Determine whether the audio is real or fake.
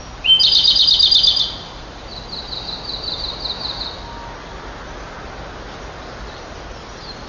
real